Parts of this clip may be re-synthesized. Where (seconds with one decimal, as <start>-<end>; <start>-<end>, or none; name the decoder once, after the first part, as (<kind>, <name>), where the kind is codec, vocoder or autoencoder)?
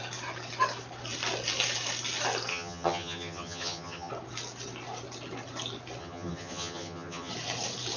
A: 2.5-4.1 (vocoder, HiFi-GAN); 6.0-7.3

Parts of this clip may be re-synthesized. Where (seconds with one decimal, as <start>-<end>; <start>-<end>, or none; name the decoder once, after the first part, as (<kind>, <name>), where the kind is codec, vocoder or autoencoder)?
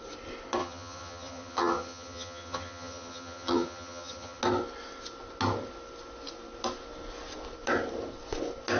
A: 0.6-4.4 (vocoder, HiFi-GAN)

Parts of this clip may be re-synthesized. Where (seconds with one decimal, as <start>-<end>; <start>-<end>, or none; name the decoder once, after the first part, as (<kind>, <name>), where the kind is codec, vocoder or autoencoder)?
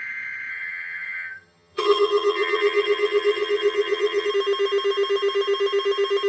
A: 0.5-4.3 (vocoder, HiFi-GAN)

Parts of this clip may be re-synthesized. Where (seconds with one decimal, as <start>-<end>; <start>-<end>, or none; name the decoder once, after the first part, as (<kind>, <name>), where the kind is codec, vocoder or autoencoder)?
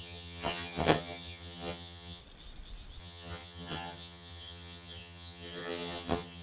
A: 0.0-2.2 (vocoder, HiFi-GAN); 3.0-6.4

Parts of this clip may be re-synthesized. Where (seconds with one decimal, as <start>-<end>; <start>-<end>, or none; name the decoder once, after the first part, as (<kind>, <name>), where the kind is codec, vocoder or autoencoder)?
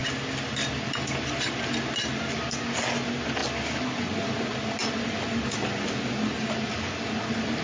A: none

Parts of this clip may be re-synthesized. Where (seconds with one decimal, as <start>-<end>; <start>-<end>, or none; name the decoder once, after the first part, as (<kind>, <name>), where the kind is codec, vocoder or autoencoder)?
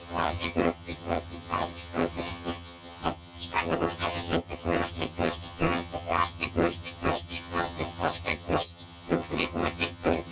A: 0.0-10.3 (vocoder, HiFi-GAN)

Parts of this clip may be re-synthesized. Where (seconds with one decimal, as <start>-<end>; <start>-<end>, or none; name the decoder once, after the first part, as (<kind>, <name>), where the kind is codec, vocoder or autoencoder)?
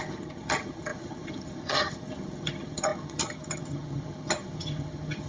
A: 0.0-5.3 (vocoder, HiFi-GAN)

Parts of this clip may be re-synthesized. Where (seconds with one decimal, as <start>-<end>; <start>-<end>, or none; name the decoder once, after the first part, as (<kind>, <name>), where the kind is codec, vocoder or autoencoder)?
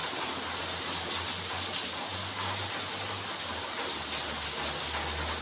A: none